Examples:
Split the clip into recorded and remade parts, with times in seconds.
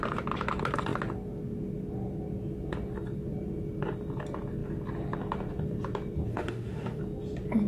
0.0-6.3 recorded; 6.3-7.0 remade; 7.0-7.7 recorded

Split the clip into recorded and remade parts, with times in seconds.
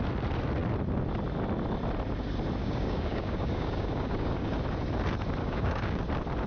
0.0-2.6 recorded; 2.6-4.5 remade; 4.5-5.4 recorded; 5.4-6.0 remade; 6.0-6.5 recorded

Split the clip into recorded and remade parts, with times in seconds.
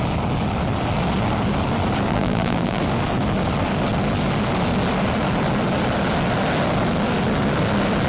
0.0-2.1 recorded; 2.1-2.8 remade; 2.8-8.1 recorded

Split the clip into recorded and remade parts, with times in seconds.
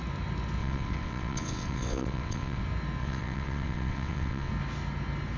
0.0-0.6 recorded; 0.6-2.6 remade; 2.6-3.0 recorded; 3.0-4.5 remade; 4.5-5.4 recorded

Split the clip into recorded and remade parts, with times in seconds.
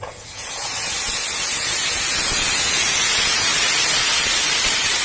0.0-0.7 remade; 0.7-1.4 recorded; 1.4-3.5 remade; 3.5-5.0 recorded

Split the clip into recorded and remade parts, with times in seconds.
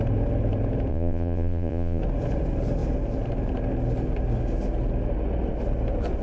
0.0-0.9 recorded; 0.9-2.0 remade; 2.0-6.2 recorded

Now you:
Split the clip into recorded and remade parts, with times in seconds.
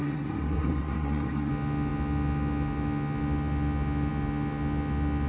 0.0-1.5 remade; 1.5-5.3 recorded